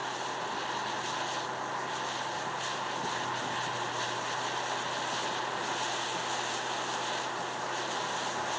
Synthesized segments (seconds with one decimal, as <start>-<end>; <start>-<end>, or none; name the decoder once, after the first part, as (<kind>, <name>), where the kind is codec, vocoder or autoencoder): none